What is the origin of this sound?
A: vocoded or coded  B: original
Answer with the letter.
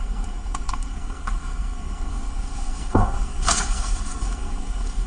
A